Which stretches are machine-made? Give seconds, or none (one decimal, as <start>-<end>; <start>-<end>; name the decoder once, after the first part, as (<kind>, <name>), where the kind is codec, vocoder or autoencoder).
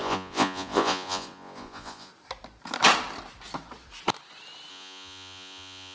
0.0-2.1 (vocoder, Vocos); 4.7-5.9